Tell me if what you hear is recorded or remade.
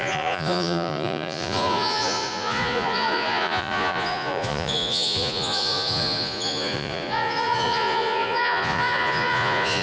remade